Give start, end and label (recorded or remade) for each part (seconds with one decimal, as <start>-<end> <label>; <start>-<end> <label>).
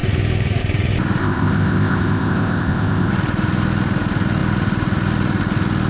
0.0-1.2 recorded; 1.2-3.1 remade; 3.1-5.9 recorded